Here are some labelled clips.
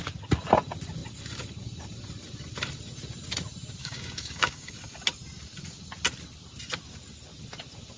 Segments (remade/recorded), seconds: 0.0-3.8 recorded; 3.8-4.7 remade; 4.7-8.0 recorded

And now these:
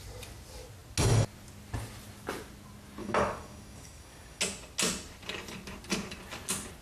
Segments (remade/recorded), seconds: 0.0-3.0 recorded; 3.0-4.4 remade; 4.4-6.8 recorded

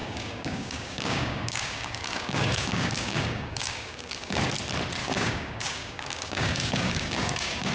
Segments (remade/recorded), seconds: 0.0-4.4 remade; 4.4-5.0 recorded; 5.0-7.7 remade

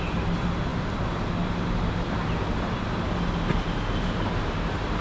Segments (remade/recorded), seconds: 0.0-5.0 recorded

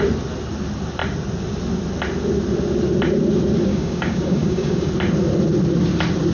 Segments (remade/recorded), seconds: 0.0-3.7 recorded; 3.7-4.9 remade; 4.9-6.3 recorded

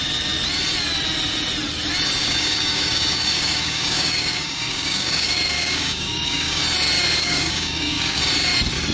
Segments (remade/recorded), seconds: 0.0-2.2 recorded; 2.2-6.6 remade; 6.6-7.2 recorded; 7.2-8.2 remade; 8.2-8.9 recorded

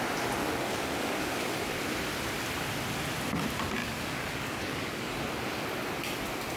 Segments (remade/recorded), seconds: 0.0-0.4 recorded; 0.4-1.8 remade; 1.8-3.8 recorded; 3.8-5.2 remade; 5.2-6.6 recorded

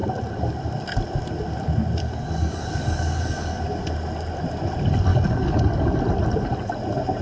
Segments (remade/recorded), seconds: 0.0-2.0 recorded; 2.0-3.5 remade; 3.5-5.1 recorded; 5.1-6.0 remade; 6.0-7.2 recorded